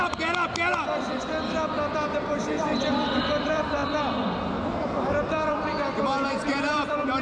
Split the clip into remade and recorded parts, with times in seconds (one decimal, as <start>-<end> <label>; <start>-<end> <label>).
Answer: 0.0-1.9 recorded; 1.9-3.8 remade; 3.8-5.1 recorded; 5.1-5.7 remade; 5.7-6.3 recorded; 6.3-7.2 remade